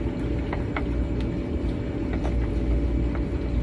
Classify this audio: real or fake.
real